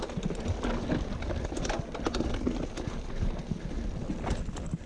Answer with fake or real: real